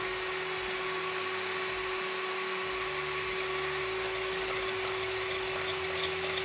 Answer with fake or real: real